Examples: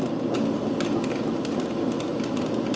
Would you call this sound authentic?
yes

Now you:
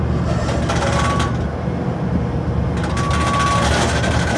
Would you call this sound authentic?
yes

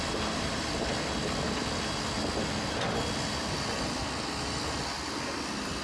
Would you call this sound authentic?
yes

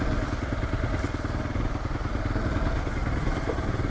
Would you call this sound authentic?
yes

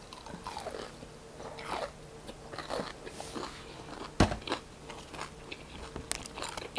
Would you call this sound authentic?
yes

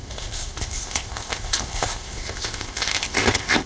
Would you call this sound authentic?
no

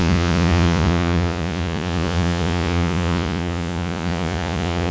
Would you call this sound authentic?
no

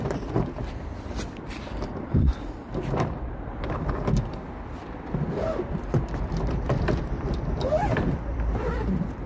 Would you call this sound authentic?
no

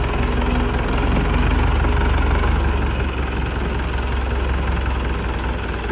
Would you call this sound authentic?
yes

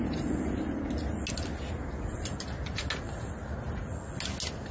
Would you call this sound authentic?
yes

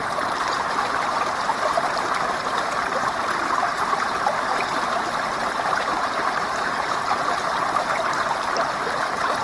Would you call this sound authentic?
no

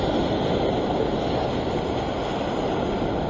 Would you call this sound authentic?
yes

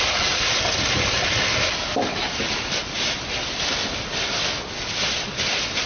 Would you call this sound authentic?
yes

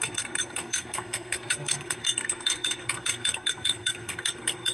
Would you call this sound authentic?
no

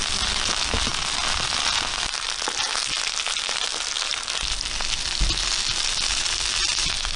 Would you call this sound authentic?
yes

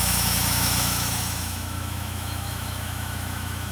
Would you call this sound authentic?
no